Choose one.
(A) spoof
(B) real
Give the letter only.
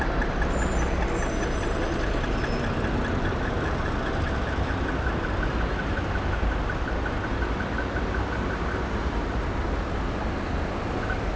B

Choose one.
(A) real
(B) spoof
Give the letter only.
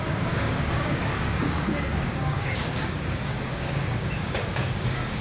B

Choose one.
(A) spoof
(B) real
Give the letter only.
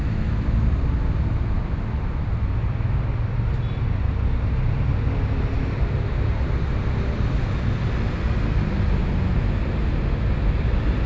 B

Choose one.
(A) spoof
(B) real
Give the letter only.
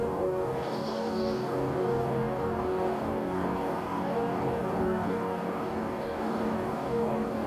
A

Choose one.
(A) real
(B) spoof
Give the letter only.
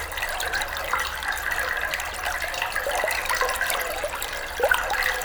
A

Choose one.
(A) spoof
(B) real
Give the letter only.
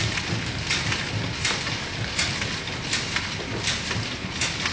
B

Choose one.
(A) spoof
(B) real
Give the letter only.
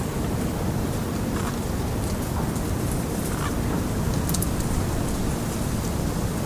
B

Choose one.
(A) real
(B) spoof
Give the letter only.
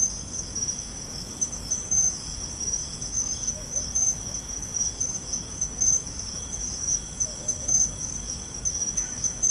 B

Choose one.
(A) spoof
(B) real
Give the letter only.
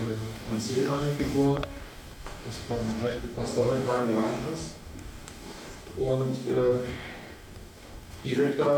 A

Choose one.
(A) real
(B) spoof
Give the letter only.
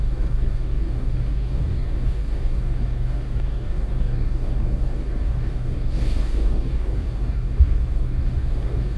B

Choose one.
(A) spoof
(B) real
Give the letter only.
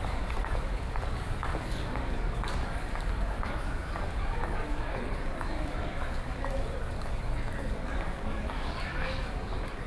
A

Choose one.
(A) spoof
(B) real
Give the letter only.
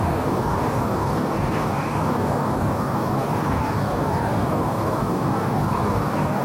A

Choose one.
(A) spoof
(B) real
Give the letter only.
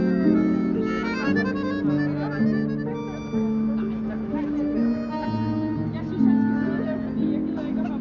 B